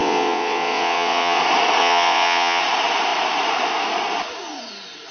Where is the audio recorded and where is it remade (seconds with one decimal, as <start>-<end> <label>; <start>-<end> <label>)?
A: 0.0-1.4 remade; 1.4-1.8 recorded; 1.8-2.6 remade; 2.6-5.1 recorded